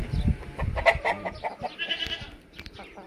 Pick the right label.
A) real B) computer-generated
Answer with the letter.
A